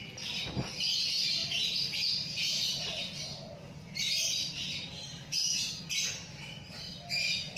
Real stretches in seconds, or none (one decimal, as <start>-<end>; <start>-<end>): 0.0-1.4; 5.8-7.6